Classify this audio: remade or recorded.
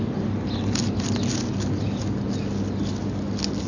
recorded